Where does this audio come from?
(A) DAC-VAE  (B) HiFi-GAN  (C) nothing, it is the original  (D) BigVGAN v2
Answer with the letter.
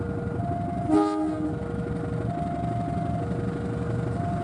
C